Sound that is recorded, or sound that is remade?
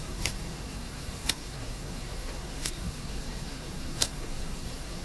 remade